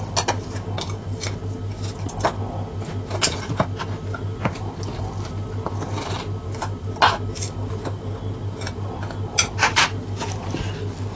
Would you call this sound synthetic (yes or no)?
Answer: no